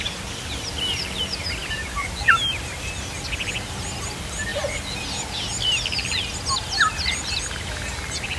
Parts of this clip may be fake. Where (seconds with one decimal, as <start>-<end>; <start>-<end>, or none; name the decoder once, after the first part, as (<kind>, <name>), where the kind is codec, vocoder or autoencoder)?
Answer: none